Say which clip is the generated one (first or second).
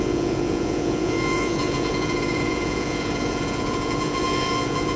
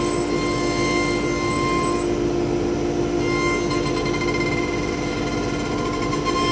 first